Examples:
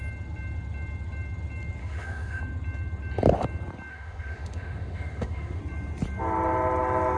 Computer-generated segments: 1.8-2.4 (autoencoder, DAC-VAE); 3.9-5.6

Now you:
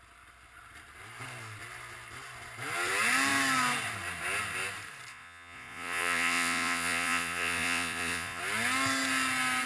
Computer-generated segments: 5.1-8.4 (vocoder, Vocos)

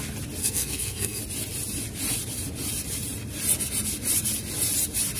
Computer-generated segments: 0.4-1.2 (codec, SNAC)

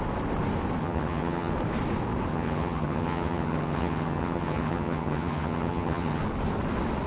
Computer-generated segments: 0.8-1.5 (vocoder, HiFi-GAN); 2.3-6.2

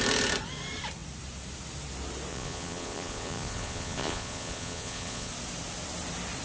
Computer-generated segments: 2.3-5.3 (vocoder, Vocos)

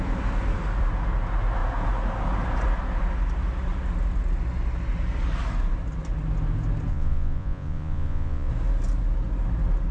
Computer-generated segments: 6.9-8.5 (vocoder, Vocos)

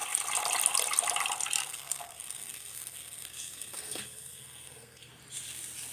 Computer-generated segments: 1.6-5.1 (codec, SNAC)

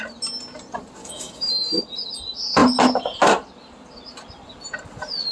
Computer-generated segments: 1.0-1.5 (autoencoder, DAC-VAE)